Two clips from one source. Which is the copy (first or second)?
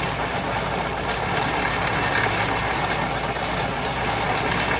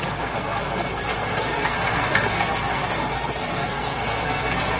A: second